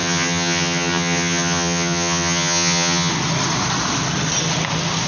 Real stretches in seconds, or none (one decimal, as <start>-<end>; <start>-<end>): 3.1-5.1